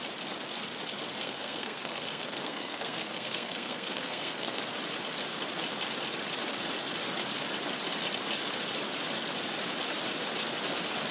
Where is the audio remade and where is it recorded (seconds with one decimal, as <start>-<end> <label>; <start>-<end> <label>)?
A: 0.0-1.2 recorded; 1.2-4.6 remade; 4.6-11.1 recorded